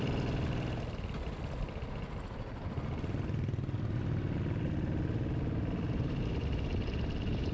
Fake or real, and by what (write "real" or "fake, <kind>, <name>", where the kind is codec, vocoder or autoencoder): real